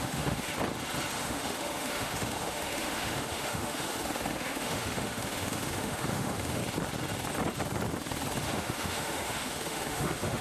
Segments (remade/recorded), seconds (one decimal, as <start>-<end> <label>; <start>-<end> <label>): 0.0-0.5 remade; 0.5-1.2 recorded; 1.2-6.6 remade; 6.6-8.4 recorded; 8.4-10.4 remade